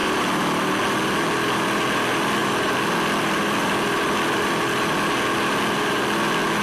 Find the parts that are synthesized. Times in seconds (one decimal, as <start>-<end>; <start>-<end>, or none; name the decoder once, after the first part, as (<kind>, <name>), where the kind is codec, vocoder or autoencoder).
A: 0.0-0.7 (vocoder, BigVGAN v2); 2.4-4.5